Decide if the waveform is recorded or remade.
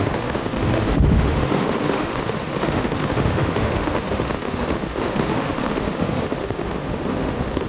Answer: remade